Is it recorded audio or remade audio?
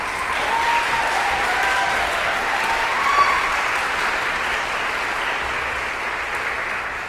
recorded